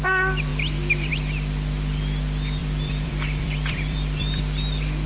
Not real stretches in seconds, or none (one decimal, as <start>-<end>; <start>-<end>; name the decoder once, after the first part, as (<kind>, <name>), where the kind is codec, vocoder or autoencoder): 2.6-4.4 (vocoder, BigVGAN v2)